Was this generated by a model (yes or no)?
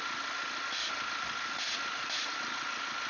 no